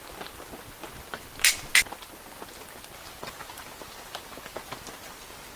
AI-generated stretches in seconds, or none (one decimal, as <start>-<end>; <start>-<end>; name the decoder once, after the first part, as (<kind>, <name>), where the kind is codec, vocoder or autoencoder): none